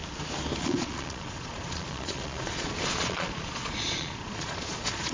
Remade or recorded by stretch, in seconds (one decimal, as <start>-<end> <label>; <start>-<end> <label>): 0.0-0.6 recorded; 0.6-5.1 remade